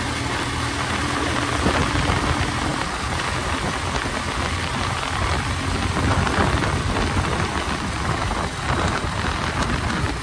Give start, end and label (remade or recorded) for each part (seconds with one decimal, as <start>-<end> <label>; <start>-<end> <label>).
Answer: 0.0-10.2 recorded